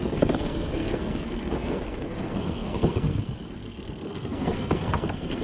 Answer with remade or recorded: remade